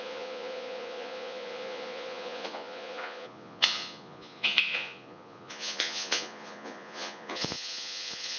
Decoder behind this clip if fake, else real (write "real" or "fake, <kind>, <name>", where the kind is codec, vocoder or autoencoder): fake, vocoder, Vocos